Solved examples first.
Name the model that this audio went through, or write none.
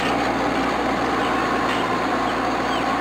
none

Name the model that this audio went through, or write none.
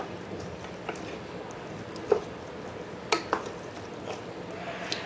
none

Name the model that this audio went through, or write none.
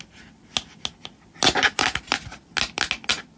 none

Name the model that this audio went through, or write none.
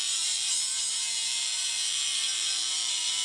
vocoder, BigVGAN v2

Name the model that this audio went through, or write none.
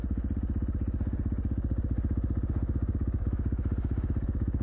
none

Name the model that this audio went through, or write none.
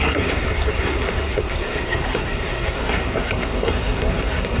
codec, SNAC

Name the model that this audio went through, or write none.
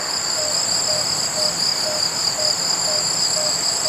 none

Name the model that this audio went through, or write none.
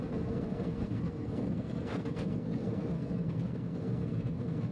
codec, SNAC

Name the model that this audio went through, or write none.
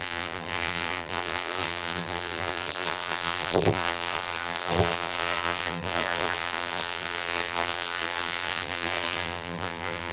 vocoder, BigVGAN v2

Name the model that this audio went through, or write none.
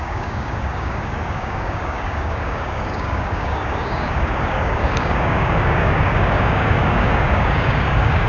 codec, DAC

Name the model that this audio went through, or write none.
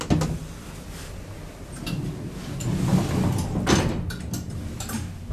none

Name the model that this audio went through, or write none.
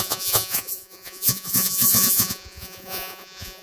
vocoder, Vocos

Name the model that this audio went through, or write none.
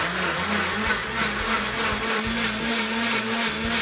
none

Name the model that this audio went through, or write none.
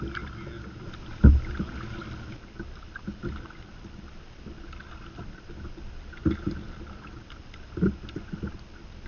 none